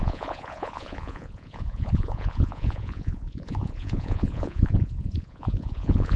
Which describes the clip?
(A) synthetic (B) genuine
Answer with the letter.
A